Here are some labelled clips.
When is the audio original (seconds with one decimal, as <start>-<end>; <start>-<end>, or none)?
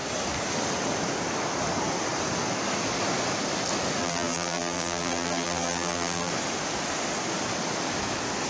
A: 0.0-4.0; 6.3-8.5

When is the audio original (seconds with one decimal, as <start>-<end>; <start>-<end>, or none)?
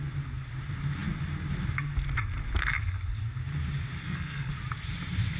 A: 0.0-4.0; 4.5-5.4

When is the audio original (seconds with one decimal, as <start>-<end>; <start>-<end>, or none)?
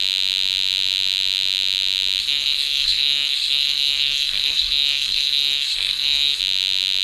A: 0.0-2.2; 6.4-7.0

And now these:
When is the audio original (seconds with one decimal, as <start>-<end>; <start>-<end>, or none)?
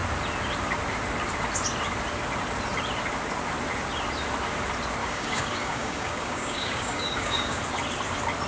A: 0.0-5.0; 7.6-8.5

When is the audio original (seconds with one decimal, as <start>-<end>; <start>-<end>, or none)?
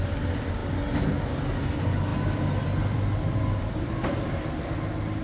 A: 0.0-2.1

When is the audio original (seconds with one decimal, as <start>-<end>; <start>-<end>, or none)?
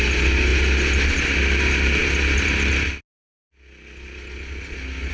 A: 0.0-5.1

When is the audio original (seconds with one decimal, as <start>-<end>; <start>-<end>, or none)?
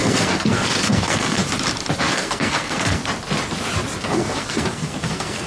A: 1.4-2.0; 3.0-4.0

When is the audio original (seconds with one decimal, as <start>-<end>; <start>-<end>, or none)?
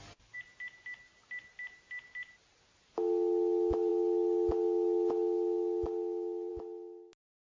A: 0.0-7.4